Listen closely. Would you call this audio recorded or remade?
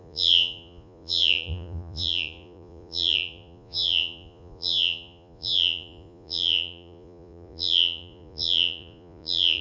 remade